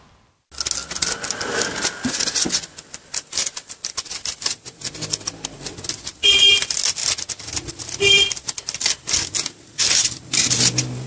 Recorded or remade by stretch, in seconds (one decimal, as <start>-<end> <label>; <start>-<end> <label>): 0.0-11.1 recorded